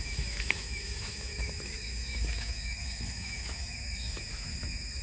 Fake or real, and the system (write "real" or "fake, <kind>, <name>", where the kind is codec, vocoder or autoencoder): fake, autoencoder, DAC-VAE